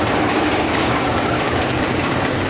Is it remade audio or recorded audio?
remade